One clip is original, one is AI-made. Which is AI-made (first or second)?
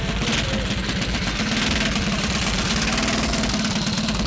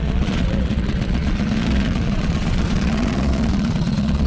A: second